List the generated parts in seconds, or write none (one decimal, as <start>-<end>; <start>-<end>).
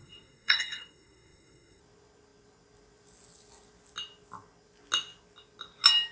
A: 0.0-1.8